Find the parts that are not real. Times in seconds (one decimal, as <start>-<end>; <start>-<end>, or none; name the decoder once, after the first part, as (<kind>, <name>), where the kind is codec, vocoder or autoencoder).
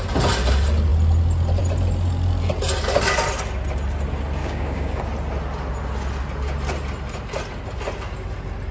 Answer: 4.4-5.0 (codec, DAC)